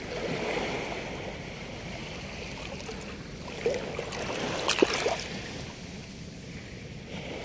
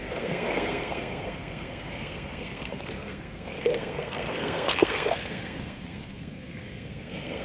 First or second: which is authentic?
first